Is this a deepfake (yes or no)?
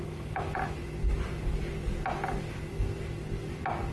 no